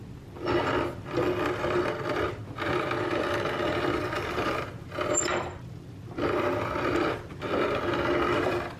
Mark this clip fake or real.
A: fake